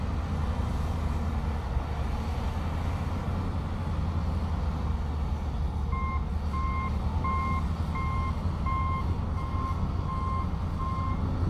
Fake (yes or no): no